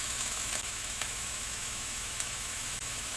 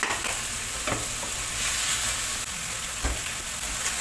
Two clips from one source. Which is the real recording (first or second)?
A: second